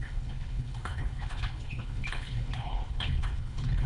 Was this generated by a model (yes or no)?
yes